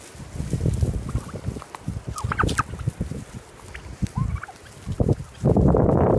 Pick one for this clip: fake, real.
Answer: real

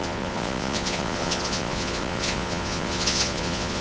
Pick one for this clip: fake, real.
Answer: fake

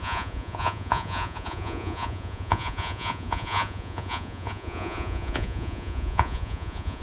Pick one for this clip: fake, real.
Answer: fake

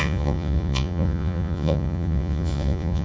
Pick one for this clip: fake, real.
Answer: fake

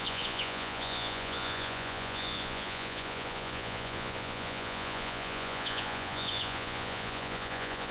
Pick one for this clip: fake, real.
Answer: fake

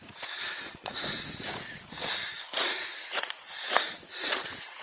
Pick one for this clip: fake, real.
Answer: fake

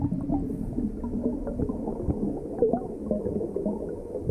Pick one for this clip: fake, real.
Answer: real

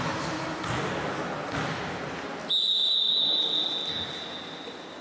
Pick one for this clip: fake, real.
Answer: real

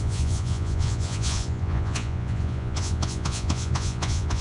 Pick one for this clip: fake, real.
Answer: fake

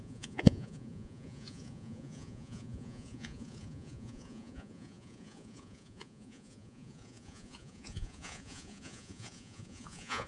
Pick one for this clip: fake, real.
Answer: fake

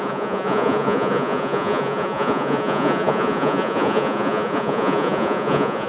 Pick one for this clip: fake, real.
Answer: fake